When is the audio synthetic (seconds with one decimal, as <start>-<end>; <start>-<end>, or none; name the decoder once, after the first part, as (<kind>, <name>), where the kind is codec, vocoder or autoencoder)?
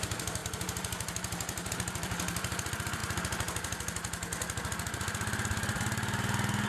0.0-3.0 (vocoder, BigVGAN v2)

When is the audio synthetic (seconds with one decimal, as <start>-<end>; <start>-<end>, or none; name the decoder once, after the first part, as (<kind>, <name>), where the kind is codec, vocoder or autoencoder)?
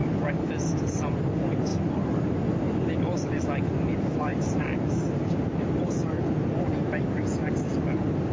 0.0-0.5 (vocoder, BigVGAN v2); 1.7-2.3; 4.3-7.5